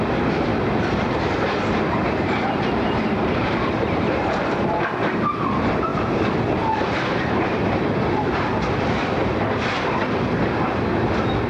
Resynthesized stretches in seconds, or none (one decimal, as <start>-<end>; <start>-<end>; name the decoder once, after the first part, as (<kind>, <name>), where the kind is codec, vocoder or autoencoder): 0.0-0.5 (vocoder, BigVGAN v2); 1.0-9.2